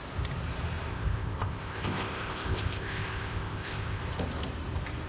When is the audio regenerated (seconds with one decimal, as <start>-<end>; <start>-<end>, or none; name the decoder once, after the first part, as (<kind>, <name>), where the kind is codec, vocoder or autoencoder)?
0.9-4.0 (codec, ZipCodec)